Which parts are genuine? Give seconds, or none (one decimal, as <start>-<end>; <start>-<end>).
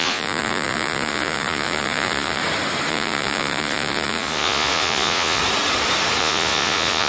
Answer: 2.4-2.9; 5.4-6.2